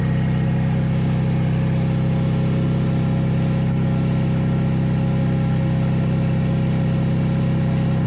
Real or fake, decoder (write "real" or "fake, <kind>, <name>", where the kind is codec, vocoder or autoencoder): real